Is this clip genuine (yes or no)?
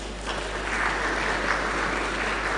yes